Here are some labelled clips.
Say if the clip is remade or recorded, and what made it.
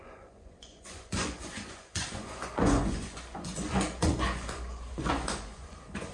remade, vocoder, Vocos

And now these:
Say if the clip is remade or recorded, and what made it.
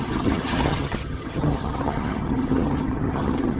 remade, vocoder, HiFi-GAN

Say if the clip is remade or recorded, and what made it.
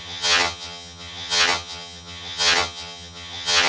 remade, vocoder, HiFi-GAN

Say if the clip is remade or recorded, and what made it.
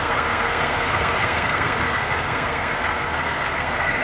remade, codec, SNAC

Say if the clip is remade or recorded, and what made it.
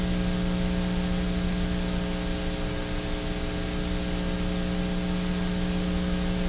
recorded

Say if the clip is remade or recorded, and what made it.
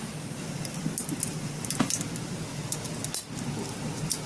recorded